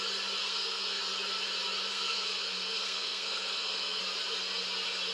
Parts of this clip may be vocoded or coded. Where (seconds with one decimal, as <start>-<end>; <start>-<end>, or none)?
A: 0.4-1.0; 1.9-4.0